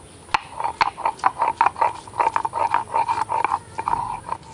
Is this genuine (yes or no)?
yes